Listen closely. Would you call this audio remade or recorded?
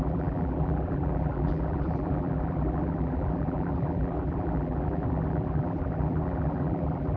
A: remade